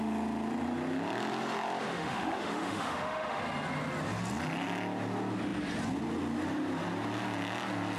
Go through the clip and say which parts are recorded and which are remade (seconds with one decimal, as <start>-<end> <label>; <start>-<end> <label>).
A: 0.0-1.9 recorded; 1.9-3.4 remade; 3.4-8.0 recorded